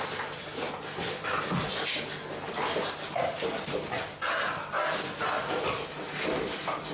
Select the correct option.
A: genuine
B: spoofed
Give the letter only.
A